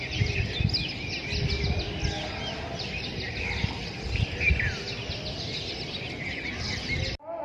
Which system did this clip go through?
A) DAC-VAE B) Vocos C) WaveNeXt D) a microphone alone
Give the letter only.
D